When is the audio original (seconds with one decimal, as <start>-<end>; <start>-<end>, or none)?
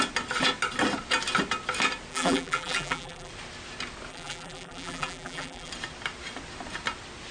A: 0.0-2.1; 3.3-4.1; 5.7-7.3